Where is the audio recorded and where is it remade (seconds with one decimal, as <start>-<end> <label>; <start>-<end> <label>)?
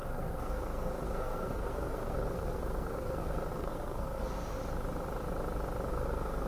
0.0-4.6 remade; 4.6-5.9 recorded; 5.9-6.5 remade